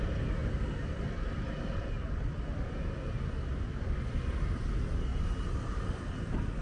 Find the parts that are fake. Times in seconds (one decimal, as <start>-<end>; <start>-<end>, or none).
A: 5.1-6.0